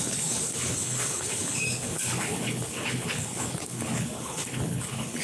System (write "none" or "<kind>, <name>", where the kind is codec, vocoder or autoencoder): codec, HILCodec